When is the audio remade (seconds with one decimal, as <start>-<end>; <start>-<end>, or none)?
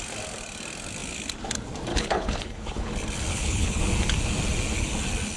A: 1.9-2.9; 3.3-3.8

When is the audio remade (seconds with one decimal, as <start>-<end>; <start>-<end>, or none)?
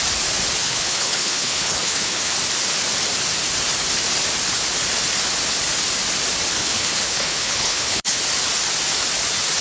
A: 0.6-2.3; 6.6-8.2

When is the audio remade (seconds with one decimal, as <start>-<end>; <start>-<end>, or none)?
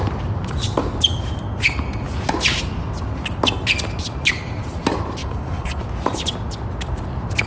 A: 5.2-5.8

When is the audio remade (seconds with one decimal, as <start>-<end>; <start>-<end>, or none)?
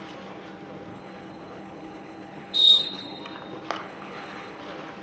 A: 0.9-3.2; 3.8-4.6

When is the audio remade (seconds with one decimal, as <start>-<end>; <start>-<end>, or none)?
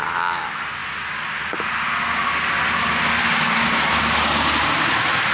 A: none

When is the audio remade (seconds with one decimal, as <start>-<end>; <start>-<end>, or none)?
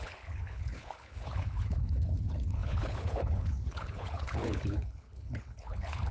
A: 0.0-6.1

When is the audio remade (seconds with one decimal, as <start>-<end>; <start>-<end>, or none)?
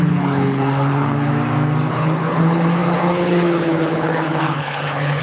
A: 0.0-1.3; 1.9-5.2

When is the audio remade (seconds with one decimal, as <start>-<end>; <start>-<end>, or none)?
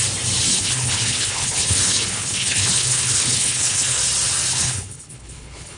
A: 0.5-4.0; 4.5-5.8